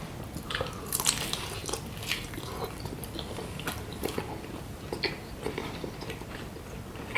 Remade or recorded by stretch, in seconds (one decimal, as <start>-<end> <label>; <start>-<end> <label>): 0.0-7.2 recorded